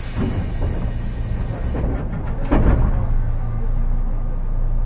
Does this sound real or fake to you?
real